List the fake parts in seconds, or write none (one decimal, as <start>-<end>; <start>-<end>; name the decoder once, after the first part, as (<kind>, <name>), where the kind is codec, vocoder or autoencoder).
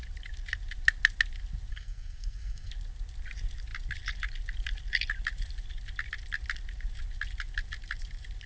1.7-2.7 (codec, SNAC)